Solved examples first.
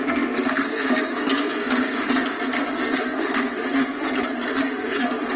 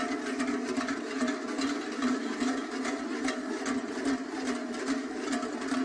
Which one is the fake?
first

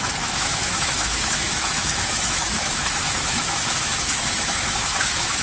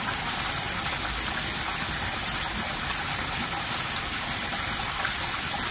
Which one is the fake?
first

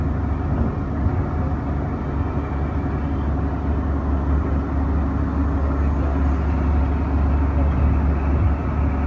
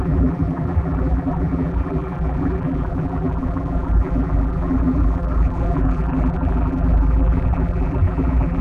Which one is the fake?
second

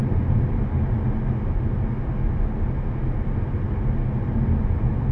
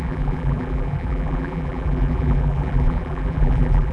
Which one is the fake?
second